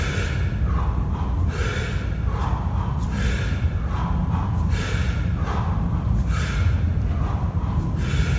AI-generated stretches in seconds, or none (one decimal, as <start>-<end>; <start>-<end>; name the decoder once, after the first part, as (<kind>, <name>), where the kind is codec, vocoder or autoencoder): 6.9-7.8 (vocoder, BigVGAN v2)